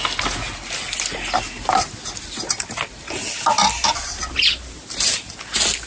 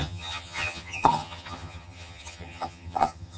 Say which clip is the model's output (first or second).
second